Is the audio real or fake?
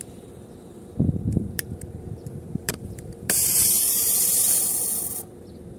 fake